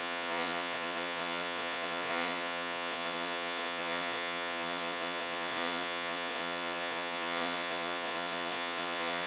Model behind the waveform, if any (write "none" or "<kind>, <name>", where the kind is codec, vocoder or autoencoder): vocoder, Vocos